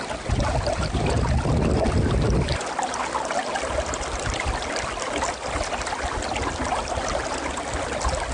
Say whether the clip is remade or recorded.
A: recorded